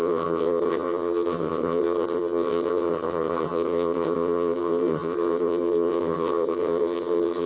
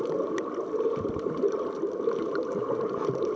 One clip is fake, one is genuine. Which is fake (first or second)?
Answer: first